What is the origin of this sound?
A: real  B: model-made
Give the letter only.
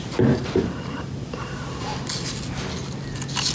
A